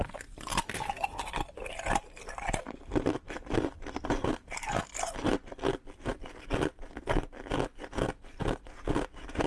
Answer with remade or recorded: recorded